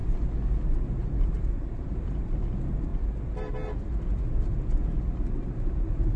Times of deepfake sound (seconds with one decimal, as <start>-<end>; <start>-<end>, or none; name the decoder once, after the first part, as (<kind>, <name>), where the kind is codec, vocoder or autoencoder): 1.0-2.9 (vocoder, BigVGAN v2); 5.7-6.2